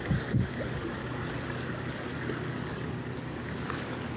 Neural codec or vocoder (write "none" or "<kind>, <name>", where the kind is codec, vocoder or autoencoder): codec, DAC